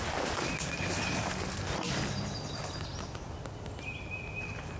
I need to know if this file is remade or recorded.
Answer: recorded